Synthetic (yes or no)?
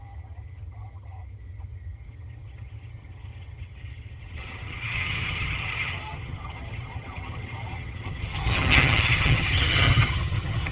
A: yes